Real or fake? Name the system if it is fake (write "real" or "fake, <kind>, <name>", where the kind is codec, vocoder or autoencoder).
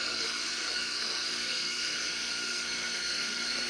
fake, codec, SNAC